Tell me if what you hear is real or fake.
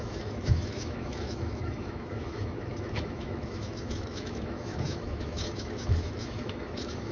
fake